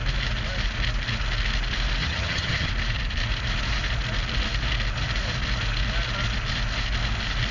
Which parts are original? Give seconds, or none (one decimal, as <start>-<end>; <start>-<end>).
0.0-2.0; 2.7-7.5